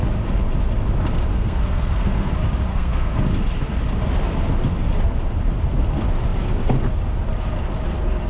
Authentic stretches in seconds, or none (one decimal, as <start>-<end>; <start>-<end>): 0.0-1.3; 2.3-2.7; 3.2-8.3